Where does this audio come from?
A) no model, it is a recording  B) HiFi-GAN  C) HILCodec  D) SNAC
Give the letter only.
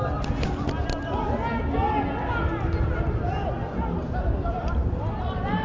A